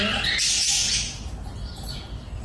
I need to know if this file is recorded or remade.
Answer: recorded